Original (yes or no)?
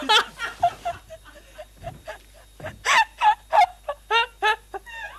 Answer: yes